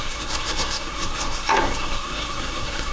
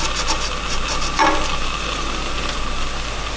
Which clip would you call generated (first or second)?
first